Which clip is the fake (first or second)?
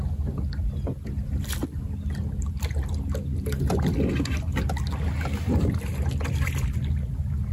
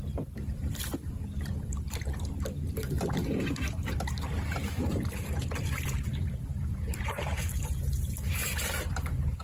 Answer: second